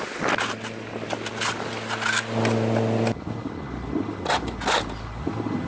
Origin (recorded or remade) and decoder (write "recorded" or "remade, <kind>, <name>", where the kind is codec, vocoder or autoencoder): recorded